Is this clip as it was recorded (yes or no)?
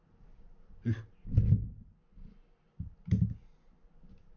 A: yes